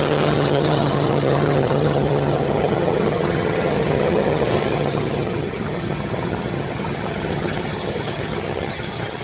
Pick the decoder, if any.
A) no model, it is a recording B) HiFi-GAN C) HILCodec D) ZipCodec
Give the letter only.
B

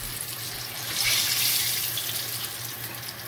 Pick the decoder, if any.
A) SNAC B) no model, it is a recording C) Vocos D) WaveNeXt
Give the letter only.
B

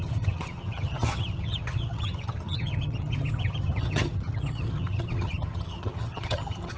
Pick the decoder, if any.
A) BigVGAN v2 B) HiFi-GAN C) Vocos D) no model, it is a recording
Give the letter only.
B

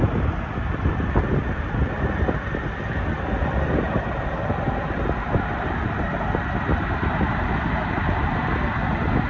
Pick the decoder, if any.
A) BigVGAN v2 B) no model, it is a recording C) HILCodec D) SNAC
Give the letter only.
B